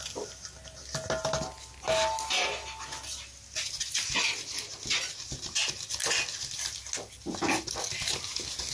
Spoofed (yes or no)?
no